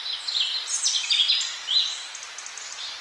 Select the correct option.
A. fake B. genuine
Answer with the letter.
B